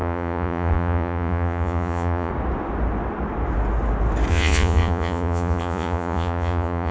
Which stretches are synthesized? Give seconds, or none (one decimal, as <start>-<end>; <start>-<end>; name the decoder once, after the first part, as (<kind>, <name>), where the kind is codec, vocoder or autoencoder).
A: 0.0-2.3 (vocoder, Vocos); 4.3-6.9